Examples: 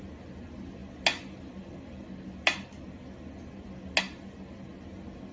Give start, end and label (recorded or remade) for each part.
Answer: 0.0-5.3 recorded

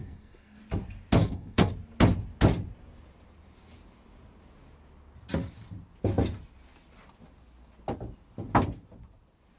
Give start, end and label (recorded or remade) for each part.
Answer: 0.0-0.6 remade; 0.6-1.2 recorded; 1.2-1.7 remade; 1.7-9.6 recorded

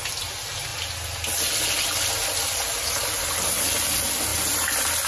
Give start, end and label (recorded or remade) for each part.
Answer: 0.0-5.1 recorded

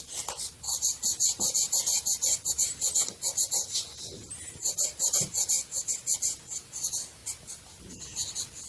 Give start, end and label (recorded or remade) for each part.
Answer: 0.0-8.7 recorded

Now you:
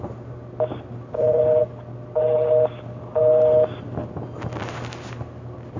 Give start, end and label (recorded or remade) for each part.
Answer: 0.0-5.8 recorded

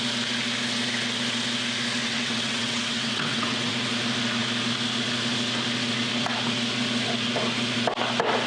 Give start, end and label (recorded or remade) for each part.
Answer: 0.0-2.0 recorded; 2.0-3.7 remade; 3.7-8.5 recorded

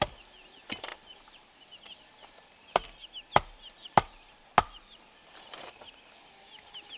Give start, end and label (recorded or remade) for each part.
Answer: 0.0-7.0 recorded

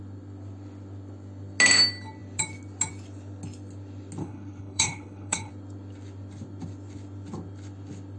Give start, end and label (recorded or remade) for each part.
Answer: 0.0-4.2 recorded; 4.2-5.5 remade; 5.5-8.2 recorded